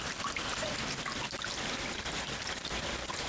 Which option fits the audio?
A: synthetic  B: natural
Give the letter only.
B